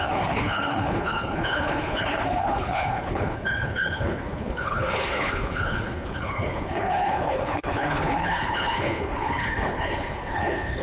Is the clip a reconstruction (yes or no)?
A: yes